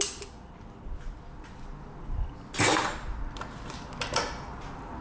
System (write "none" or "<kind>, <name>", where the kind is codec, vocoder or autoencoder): none